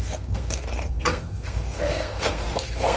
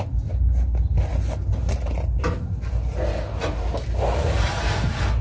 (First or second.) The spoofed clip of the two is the first